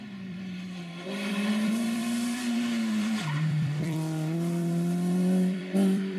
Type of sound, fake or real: fake